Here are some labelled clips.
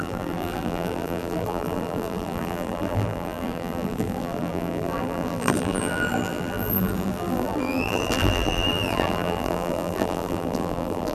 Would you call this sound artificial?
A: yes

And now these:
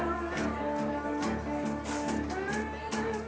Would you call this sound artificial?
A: no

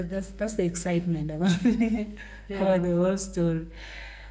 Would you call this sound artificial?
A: yes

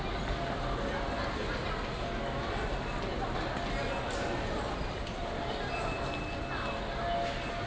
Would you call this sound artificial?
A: no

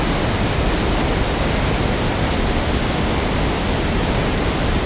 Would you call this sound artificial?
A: no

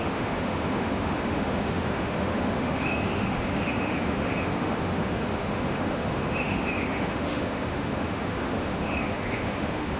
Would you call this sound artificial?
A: yes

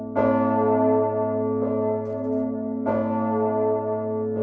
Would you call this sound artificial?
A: no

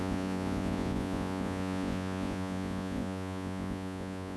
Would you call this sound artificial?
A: yes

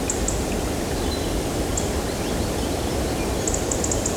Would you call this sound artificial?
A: no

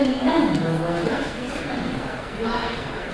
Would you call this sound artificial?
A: yes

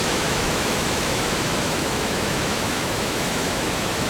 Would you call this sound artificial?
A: yes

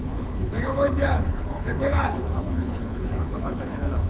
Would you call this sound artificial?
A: yes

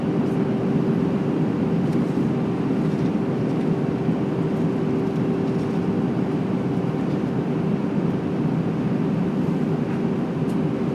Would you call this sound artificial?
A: no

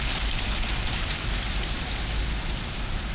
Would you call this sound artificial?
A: yes